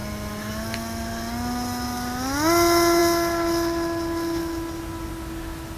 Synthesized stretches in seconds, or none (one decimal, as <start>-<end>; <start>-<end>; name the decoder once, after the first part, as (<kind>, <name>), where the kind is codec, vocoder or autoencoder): none